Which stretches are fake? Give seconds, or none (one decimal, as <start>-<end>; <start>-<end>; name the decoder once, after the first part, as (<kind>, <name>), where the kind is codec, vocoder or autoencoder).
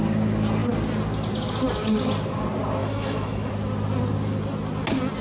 2.8-3.5 (autoencoder, DAC-VAE)